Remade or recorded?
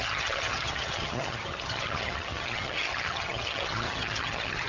remade